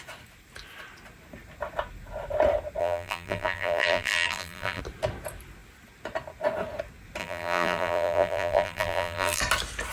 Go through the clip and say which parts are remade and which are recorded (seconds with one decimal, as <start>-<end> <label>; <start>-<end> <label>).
0.0-2.8 recorded; 2.8-4.8 remade; 4.8-7.2 recorded; 7.2-9.4 remade; 9.4-9.9 recorded